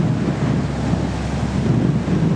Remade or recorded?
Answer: recorded